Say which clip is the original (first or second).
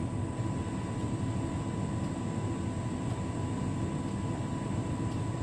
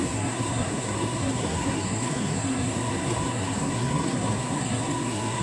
first